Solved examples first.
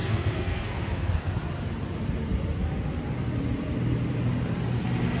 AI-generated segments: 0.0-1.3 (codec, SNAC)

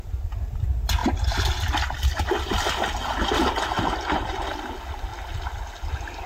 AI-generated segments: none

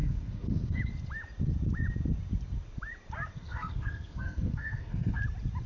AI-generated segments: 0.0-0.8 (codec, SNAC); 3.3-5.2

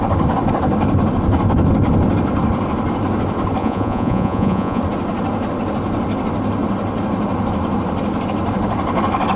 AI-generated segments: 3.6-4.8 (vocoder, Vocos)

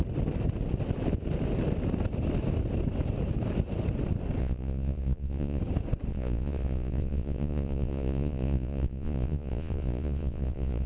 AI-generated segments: 4.4-5.6 (vocoder, Vocos); 6.1-10.9

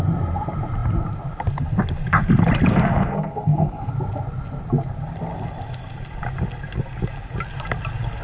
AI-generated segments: 2.7-3.9 (codec, SNAC)

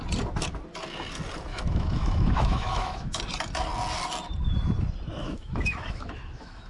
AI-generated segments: 1.5-3.2 (autoencoder, DAC-VAE); 5.2-6.7